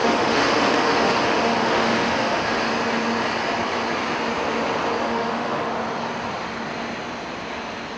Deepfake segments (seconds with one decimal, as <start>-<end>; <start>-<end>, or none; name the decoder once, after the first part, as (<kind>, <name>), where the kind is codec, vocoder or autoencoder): 0.0-2.4 (autoencoder, DAC-VAE); 5.0-5.7